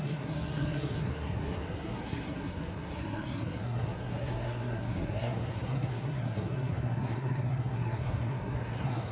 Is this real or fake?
fake